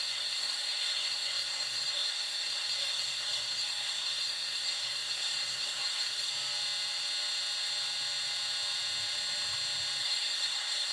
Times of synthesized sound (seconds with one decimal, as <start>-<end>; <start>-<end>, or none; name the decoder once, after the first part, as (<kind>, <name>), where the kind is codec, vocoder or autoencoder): 0.0-6.3 (codec, SNAC); 10.0-10.9